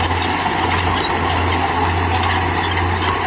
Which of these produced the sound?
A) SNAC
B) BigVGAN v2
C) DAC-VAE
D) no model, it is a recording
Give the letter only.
D